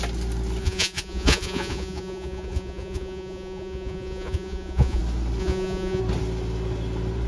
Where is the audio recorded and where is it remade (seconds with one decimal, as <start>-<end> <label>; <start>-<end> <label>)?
0.0-0.6 recorded; 0.6-5.0 remade; 5.0-5.4 recorded; 5.4-6.0 remade; 6.0-7.3 recorded